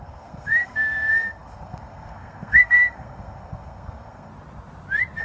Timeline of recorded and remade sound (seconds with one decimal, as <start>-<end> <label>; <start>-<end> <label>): 0.0-4.3 remade; 4.3-5.2 recorded